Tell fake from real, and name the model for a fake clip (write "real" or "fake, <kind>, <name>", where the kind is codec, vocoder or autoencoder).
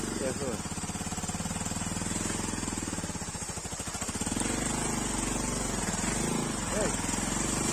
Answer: real